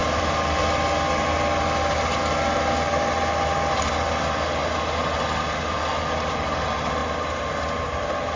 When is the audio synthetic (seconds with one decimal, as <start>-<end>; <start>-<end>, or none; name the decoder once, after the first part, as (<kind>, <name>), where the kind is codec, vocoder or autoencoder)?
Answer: none